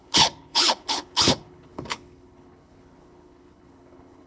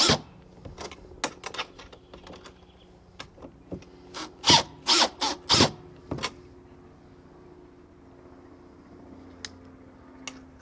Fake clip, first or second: first